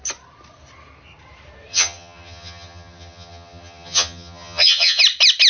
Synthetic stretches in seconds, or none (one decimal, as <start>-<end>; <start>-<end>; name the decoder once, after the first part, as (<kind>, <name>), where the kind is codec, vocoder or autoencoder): 1.7-5.0 (vocoder, HiFi-GAN)